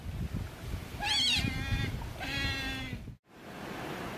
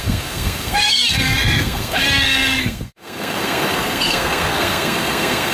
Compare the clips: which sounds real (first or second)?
first